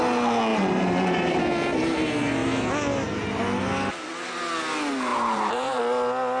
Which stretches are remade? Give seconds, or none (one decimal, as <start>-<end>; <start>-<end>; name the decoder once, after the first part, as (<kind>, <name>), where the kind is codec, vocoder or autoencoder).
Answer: 0.5-1.4 (vocoder, BigVGAN v2); 5.1-5.8